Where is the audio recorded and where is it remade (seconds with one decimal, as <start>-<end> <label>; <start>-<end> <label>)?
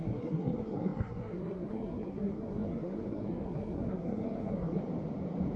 0.0-4.8 remade; 4.8-5.6 recorded